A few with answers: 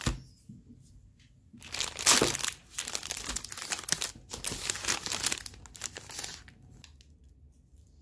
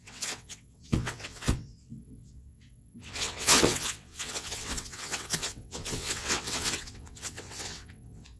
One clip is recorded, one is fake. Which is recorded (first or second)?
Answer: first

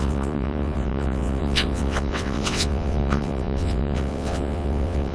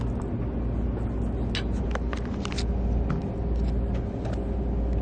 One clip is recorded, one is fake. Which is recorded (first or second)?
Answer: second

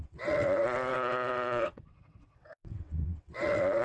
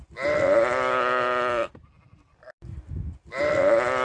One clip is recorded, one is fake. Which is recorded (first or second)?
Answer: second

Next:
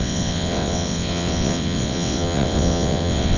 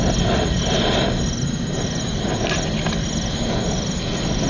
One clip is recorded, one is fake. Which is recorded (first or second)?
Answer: second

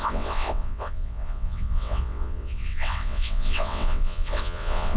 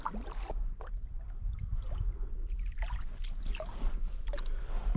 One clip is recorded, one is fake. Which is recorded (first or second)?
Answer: second